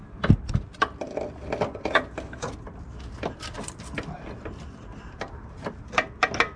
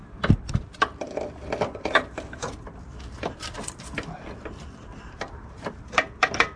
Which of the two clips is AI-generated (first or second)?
second